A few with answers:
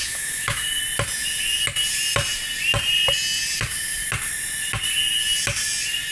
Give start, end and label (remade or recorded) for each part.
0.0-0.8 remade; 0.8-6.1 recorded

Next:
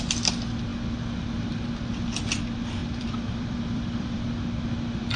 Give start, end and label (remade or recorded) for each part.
0.0-2.8 recorded; 2.8-4.2 remade; 4.2-5.2 recorded

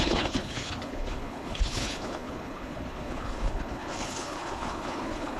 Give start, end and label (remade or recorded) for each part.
0.0-5.4 remade

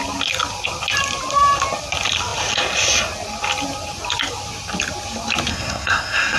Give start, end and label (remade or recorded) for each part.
0.0-5.5 recorded; 5.5-6.4 remade

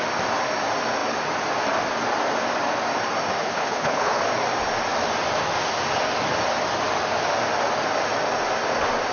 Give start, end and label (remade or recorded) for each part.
0.0-3.4 recorded; 3.4-4.2 remade; 4.2-9.1 recorded

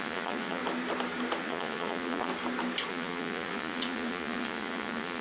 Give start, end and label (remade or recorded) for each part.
0.0-0.6 remade; 0.6-1.4 recorded; 1.4-2.3 remade; 2.3-2.9 recorded; 2.9-5.2 remade